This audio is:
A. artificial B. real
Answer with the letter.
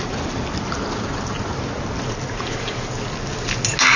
B